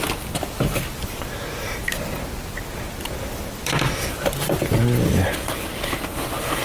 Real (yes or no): yes